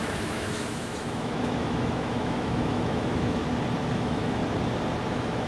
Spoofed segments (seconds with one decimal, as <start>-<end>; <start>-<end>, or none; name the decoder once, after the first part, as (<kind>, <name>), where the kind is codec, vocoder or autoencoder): 0.0-3.4 (autoencoder, DAC-VAE); 3.9-4.4; 5.1-5.5